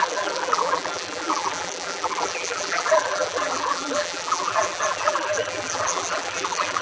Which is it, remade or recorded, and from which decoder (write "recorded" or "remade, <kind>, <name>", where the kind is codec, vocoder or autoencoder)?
remade, vocoder, BigVGAN v2